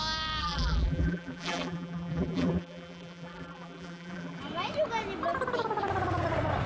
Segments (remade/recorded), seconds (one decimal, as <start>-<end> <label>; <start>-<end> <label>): 0.0-0.4 recorded; 0.4-4.4 remade; 4.4-6.7 recorded